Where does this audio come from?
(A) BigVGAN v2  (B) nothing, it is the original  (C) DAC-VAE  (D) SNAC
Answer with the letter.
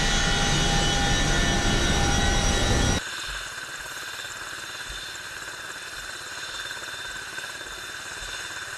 B